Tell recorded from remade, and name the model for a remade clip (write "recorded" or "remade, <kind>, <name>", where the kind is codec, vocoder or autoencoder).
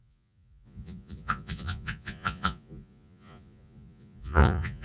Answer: remade, vocoder, Vocos